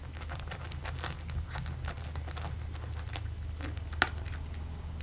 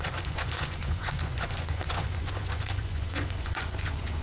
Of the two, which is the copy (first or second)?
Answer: second